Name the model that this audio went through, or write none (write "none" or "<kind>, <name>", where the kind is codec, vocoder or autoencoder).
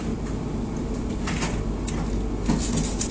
none